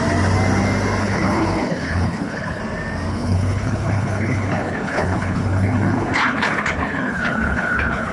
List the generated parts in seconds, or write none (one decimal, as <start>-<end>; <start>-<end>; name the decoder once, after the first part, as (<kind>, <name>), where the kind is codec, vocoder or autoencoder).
1.0-2.6 (codec, HILCodec); 3.1-8.1